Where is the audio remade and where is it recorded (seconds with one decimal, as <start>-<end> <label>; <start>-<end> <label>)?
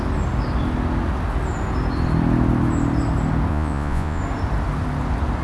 0.0-3.5 recorded; 3.5-4.2 remade; 4.2-5.4 recorded